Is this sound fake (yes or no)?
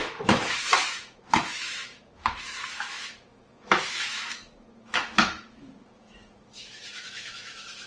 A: yes